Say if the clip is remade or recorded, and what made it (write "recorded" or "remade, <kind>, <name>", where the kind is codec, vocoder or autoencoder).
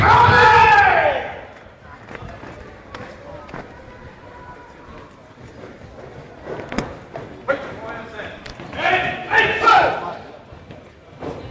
recorded